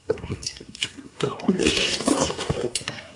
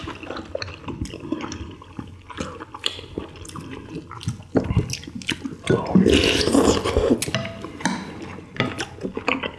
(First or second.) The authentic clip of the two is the second